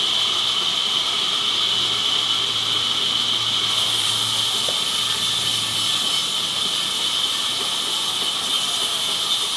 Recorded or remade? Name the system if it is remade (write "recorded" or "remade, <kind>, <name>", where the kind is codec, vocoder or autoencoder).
recorded